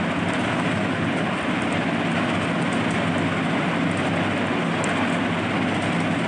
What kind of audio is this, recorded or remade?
recorded